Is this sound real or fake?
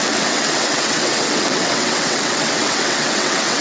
fake